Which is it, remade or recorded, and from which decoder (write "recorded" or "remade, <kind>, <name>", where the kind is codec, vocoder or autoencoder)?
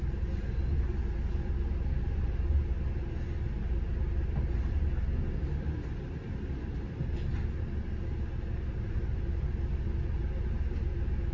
recorded